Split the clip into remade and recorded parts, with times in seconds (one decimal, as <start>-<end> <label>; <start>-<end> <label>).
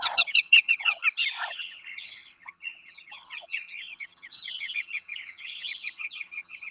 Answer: 0.0-1.0 remade; 1.0-1.5 recorded; 1.5-6.7 remade